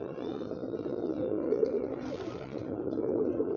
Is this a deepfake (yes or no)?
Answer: yes